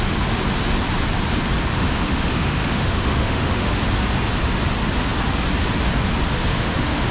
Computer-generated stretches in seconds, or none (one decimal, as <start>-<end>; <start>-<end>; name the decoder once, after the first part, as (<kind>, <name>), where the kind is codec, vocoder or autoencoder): 1.7-3.8 (autoencoder, DAC-VAE); 6.5-7.1